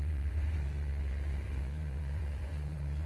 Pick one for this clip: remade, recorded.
remade